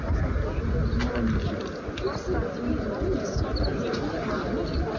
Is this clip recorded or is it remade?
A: recorded